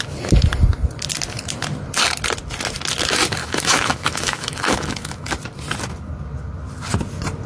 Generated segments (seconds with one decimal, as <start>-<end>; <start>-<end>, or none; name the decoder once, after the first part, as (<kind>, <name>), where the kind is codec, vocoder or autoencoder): 3.4-5.3 (autoencoder, DAC-VAE)